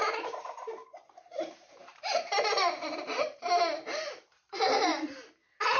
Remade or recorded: remade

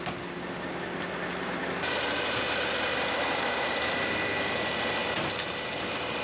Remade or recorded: recorded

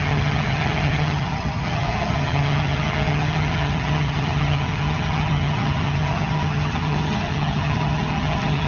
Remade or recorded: remade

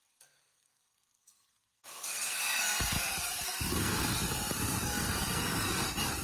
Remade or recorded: remade